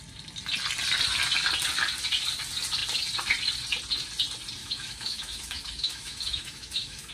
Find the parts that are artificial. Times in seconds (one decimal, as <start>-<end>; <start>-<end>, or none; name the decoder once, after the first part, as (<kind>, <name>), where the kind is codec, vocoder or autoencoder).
4.6-7.1 (autoencoder, DAC-VAE)